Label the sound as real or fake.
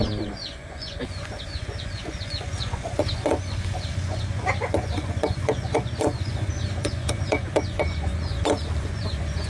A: fake